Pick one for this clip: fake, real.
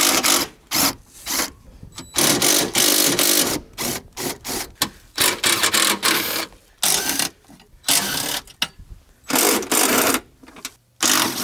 real